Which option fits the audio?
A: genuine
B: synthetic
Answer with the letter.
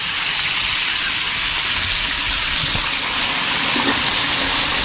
A